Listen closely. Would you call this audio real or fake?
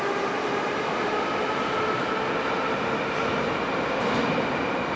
real